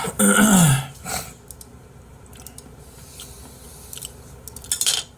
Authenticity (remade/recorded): recorded